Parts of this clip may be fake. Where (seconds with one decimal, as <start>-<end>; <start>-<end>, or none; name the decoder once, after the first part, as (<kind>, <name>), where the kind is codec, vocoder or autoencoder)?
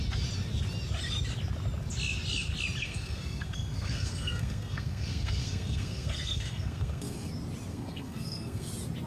2.8-7.3 (codec, SNAC); 7.7-8.7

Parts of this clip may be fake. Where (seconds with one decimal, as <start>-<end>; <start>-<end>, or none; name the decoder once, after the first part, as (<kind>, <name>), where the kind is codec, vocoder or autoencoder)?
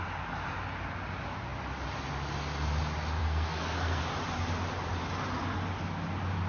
3.2-4.0 (codec, SNAC)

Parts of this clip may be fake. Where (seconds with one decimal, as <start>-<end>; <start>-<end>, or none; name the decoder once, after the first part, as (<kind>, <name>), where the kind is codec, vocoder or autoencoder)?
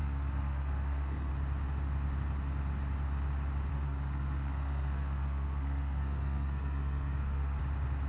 0.0-1.3 (codec, SNAC); 3.7-7.6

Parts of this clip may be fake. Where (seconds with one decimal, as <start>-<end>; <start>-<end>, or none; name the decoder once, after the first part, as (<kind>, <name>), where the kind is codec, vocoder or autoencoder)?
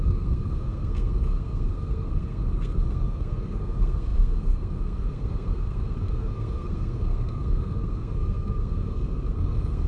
0.0-9.9 (codec, SNAC)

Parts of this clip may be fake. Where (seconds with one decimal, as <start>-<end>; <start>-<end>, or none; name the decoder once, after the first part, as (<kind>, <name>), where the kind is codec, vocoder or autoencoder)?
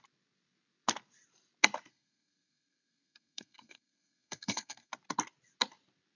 1.9-4.9 (codec, SNAC)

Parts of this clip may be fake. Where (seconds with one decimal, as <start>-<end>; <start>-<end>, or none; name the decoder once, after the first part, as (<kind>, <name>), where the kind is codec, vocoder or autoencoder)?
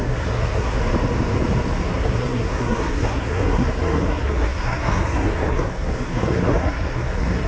0.0-0.8 (codec, SNAC); 1.8-7.5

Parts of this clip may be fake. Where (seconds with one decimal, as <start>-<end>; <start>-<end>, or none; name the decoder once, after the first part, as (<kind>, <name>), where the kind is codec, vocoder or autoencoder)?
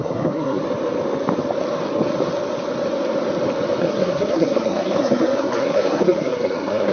0.0-0.6 (codec, SNAC); 3.8-6.9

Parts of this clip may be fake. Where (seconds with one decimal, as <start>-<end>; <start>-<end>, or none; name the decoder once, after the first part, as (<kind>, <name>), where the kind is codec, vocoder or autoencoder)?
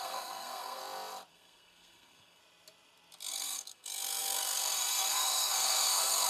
0.0-0.8 (codec, SNAC); 1.3-2.4; 3.3-6.3